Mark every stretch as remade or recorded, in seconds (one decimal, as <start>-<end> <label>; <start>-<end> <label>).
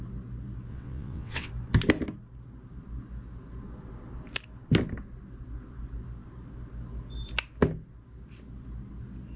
0.0-0.7 recorded; 0.7-1.5 remade; 1.5-9.4 recorded